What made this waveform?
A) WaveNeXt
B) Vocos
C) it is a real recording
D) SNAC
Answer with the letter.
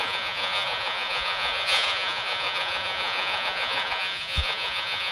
B